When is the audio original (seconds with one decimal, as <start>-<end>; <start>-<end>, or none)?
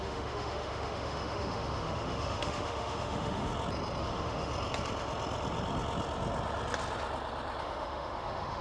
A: 3.5-4.0; 4.5-7.6